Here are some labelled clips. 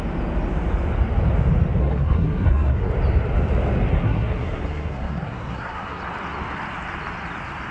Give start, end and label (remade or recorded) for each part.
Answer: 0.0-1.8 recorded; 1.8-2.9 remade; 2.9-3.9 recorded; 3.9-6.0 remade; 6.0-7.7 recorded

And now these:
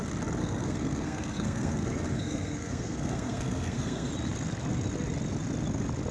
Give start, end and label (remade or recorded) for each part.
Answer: 0.0-0.4 recorded; 0.4-4.1 remade; 4.1-6.1 recorded

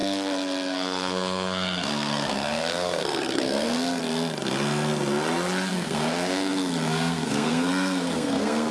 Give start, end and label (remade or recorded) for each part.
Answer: 0.0-4.0 remade; 4.0-5.7 recorded; 5.7-8.7 remade

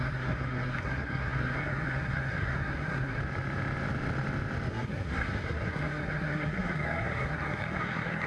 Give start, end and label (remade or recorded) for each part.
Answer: 0.0-3.2 remade; 3.2-4.7 recorded; 4.7-8.3 remade

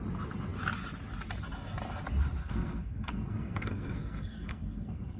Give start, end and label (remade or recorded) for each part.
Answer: 0.0-2.4 recorded; 2.4-5.2 remade